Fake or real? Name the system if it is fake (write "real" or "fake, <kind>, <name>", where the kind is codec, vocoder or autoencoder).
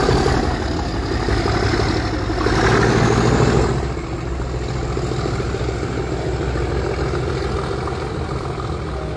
real